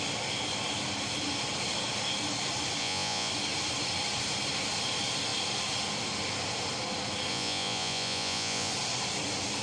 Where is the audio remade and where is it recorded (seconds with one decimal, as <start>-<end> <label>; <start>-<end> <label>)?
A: 0.0-2.8 recorded; 2.8-3.3 remade; 3.3-7.3 recorded; 7.3-8.7 remade; 8.7-9.6 recorded